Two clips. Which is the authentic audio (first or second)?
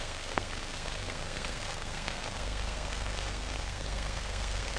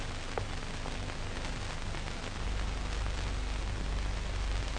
second